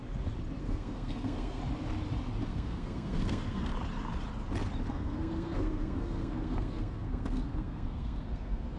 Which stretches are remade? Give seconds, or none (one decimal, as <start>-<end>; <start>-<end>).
0.6-1.6; 2.4-3.7; 4.9-8.8